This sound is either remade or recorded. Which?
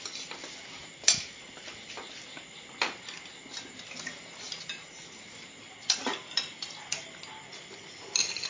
recorded